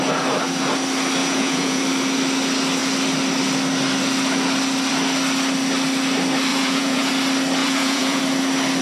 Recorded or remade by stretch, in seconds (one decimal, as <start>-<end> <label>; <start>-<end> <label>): 0.0-1.2 recorded; 1.2-1.8 remade; 1.8-6.5 recorded; 6.5-7.1 remade; 7.1-7.6 recorded; 7.6-8.2 remade; 8.2-8.8 recorded